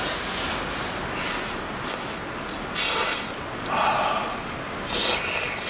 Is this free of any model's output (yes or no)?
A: yes